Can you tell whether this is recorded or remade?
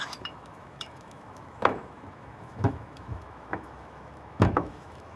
remade